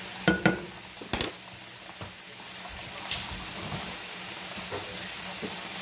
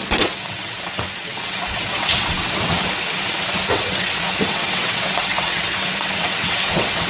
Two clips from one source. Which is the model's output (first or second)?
second